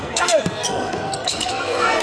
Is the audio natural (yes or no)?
no